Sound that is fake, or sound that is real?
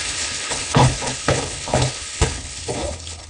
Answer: fake